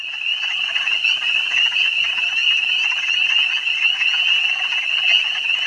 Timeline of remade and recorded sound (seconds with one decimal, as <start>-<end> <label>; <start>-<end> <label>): 0.0-5.7 recorded